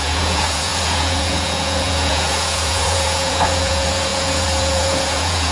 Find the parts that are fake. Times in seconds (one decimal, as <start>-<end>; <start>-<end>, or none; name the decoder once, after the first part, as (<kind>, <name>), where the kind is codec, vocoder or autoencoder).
0.0-5.5 (vocoder, Vocos)